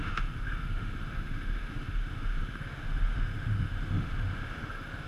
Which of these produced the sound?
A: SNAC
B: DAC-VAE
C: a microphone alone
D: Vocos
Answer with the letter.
B